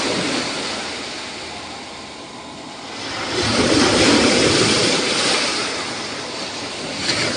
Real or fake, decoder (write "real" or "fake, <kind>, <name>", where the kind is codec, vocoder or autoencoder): real